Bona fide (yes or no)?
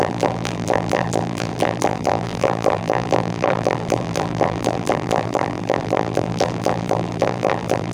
no